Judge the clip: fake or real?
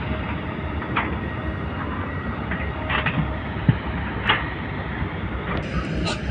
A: fake